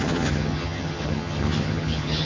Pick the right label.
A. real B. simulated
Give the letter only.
B